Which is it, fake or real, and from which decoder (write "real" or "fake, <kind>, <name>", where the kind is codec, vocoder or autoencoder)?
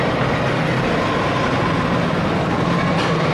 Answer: real